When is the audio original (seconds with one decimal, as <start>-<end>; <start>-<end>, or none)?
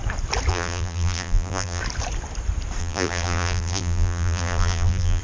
0.0-0.5; 1.8-2.8